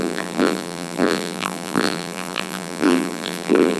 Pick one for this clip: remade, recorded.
remade